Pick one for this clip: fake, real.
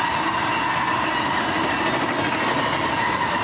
real